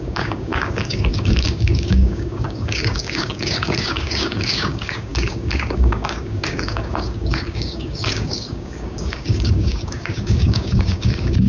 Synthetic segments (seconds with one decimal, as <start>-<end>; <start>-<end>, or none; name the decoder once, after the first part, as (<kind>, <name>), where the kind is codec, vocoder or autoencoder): 0.0-11.5 (codec, DAC)